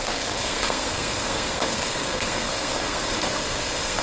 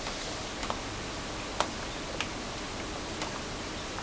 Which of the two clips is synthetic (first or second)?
first